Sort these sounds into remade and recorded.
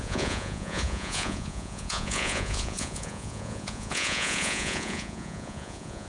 remade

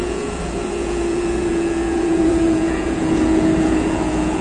remade